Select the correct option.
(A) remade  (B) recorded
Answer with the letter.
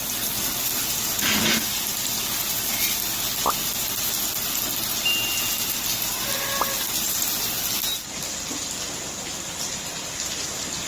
B